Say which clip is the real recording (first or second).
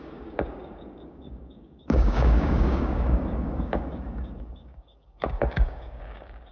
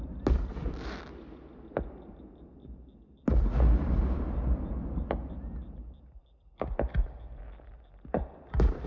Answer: second